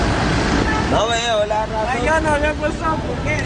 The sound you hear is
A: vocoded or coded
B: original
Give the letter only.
B